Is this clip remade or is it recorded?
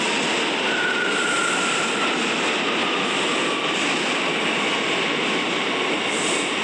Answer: recorded